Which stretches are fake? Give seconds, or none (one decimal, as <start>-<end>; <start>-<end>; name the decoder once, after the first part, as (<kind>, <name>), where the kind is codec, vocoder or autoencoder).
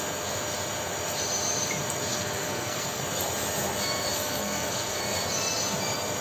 2.1-3.0 (codec, SNAC); 4.1-5.0